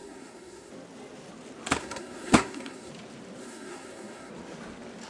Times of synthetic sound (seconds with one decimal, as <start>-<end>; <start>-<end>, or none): 0.0-0.7; 1.8-2.9; 3.4-4.3

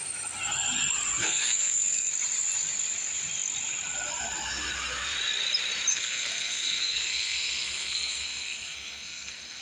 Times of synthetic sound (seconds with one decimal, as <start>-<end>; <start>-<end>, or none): 1.2-2.1; 5.9-9.6